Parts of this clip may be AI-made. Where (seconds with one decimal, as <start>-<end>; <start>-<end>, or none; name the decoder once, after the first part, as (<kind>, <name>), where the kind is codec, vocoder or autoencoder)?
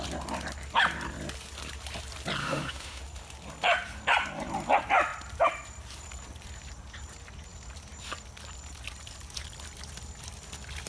2.4-3.0 (autoencoder, DAC-VAE)